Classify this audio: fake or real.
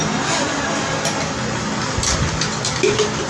real